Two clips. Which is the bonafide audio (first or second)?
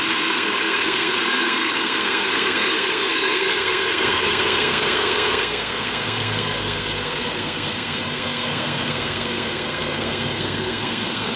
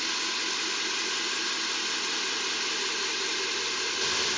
second